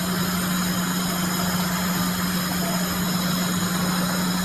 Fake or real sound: real